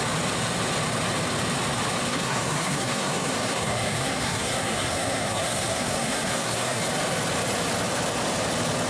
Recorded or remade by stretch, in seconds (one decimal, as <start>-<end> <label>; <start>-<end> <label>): 0.0-2.1 recorded; 2.1-6.8 remade; 6.8-8.9 recorded